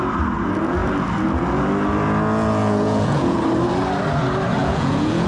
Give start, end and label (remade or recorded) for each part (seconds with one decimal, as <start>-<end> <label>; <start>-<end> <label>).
0.0-2.6 recorded; 2.6-3.4 remade; 3.4-4.6 recorded; 4.6-5.3 remade